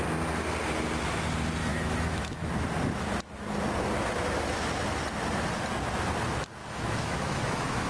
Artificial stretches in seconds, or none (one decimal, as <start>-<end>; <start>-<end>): 1.7-2.5; 6.6-7.9